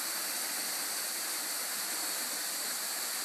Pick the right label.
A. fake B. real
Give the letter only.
B